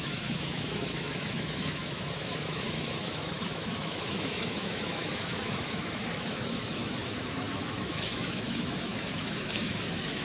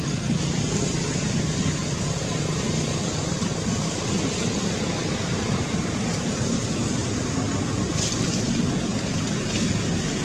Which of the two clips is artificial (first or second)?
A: first